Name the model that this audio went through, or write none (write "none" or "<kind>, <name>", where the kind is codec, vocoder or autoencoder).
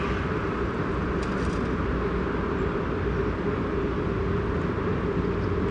none